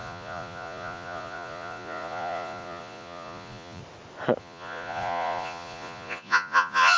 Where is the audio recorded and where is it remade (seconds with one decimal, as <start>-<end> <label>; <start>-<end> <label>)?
0.0-3.8 remade; 3.8-4.4 recorded; 4.4-7.0 remade